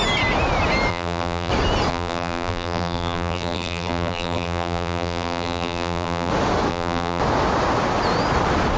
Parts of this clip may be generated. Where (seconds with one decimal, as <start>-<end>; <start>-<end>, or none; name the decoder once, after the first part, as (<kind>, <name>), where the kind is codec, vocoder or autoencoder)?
0.9-1.5 (vocoder, BigVGAN v2); 1.9-6.3; 6.7-7.2